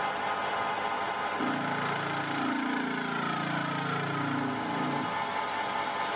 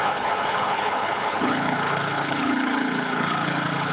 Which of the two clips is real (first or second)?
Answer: first